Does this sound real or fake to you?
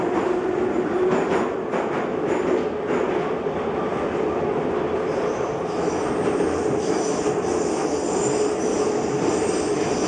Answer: real